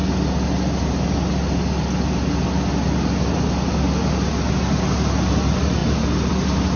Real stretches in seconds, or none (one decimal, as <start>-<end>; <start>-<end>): 0.0-6.8